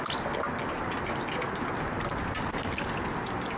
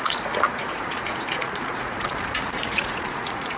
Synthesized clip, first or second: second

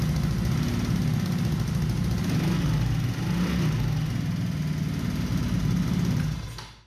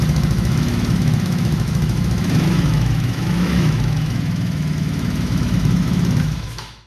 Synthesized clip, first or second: second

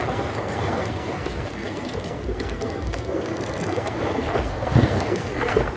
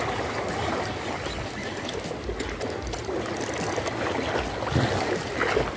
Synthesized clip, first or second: first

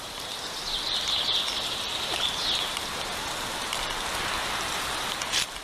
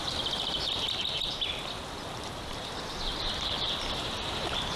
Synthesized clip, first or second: second